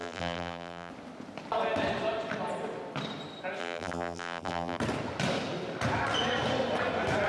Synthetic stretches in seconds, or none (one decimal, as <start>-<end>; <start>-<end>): 0.0-0.9; 3.6-4.8